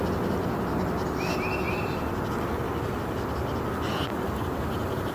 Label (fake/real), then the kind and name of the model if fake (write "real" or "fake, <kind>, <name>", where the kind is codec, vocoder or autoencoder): real